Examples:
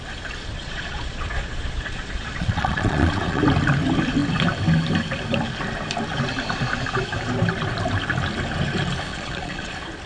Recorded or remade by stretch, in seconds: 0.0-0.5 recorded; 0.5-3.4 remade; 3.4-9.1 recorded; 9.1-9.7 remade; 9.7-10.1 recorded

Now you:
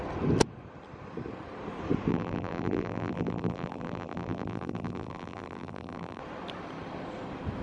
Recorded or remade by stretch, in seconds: 0.0-2.1 recorded; 2.1-6.2 remade; 6.2-7.6 recorded

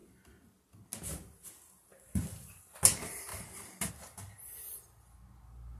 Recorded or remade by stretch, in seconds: 0.0-5.8 recorded

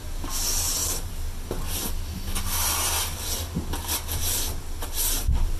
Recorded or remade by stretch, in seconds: 0.0-5.6 recorded